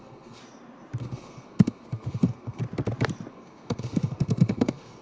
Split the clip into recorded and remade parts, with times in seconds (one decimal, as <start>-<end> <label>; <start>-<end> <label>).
0.0-0.4 remade; 0.4-1.0 recorded; 1.0-2.6 remade; 2.6-3.3 recorded; 3.3-5.0 remade